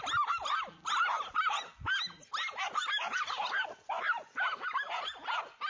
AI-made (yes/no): no